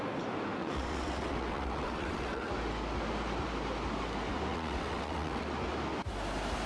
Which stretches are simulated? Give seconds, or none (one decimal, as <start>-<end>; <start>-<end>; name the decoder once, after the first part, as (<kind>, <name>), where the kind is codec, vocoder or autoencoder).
0.6-2.5 (vocoder, WaveNeXt); 4.5-5.4